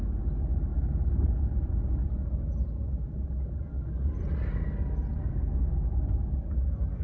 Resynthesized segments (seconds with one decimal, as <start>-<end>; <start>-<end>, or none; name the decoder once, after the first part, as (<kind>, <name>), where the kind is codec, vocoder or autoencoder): 5.2-5.7 (codec, SNAC)